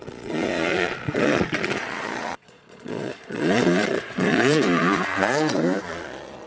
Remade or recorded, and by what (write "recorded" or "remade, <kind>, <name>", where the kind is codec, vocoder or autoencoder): remade, vocoder, Vocos